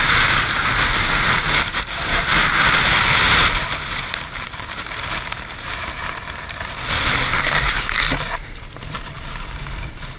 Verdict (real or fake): fake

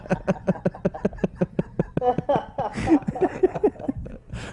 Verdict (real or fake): real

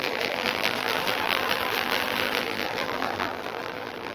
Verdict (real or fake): fake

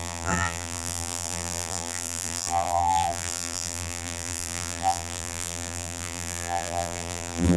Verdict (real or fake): fake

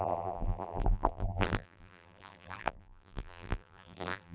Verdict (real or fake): fake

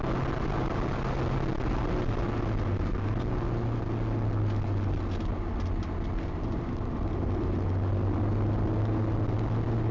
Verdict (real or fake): real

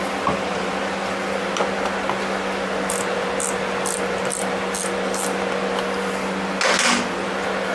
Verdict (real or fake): real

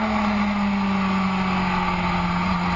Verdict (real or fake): real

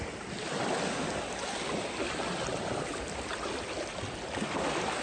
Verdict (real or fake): real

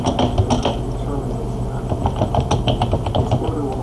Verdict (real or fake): real